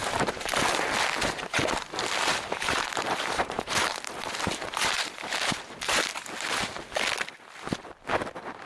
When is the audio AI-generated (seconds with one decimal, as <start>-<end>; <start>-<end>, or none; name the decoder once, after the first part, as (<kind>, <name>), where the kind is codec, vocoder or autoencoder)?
0.0-0.5 (vocoder, BigVGAN v2); 2.3-6.0